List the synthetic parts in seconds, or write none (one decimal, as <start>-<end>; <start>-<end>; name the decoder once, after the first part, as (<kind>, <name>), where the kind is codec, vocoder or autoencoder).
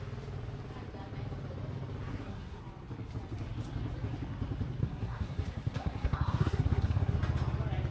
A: 2.1-2.6 (codec, SNAC); 4.8-7.2